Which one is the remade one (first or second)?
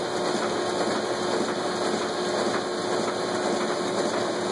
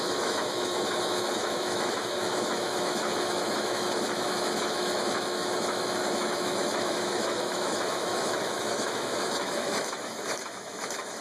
second